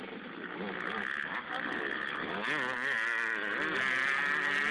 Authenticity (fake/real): real